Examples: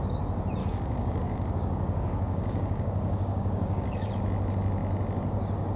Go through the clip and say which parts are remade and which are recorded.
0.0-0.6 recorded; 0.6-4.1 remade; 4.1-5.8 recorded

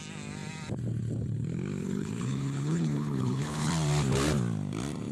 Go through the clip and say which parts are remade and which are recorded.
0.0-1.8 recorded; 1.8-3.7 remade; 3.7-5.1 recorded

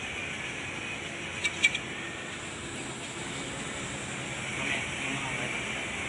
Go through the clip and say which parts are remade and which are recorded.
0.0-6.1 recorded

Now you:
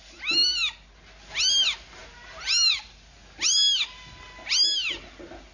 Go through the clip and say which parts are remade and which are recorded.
0.0-5.5 recorded

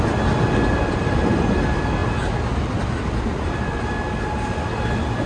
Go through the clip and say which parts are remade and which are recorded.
0.0-5.3 recorded